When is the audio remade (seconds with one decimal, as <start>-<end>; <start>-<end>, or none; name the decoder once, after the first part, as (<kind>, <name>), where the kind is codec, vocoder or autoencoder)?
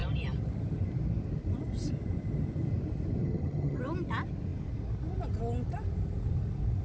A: 3.2-3.8 (vocoder, HiFi-GAN)